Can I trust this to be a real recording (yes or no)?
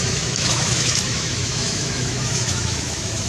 no